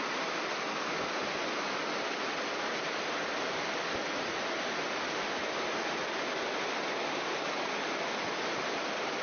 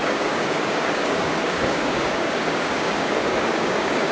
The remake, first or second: second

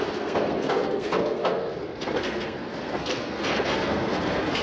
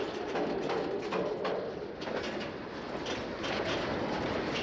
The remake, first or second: first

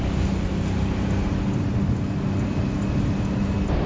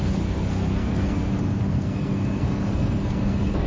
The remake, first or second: second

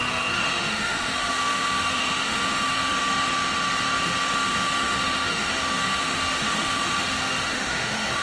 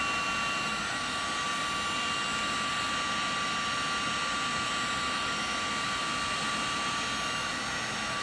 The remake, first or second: first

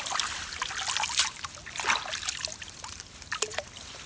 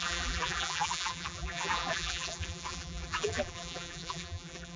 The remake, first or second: second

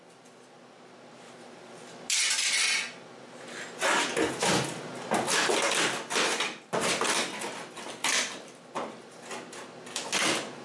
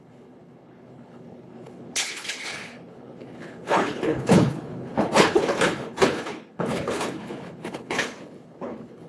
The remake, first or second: second